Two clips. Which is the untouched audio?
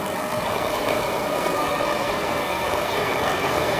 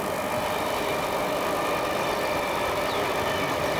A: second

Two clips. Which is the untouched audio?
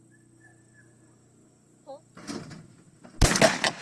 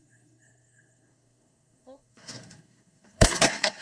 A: first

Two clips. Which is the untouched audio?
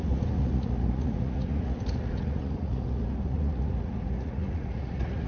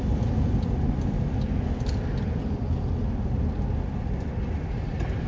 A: second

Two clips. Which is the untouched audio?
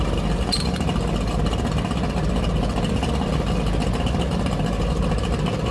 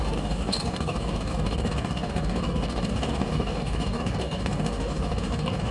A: first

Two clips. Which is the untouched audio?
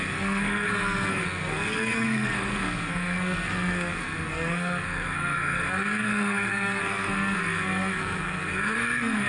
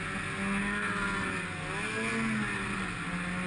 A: second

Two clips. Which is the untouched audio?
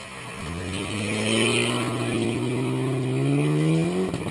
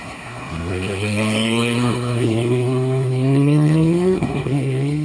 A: first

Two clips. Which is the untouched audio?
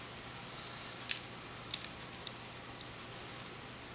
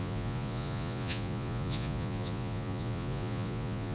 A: first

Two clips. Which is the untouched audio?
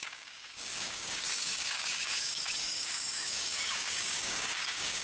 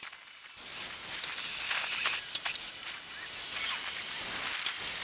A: second